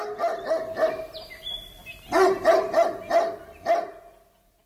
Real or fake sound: real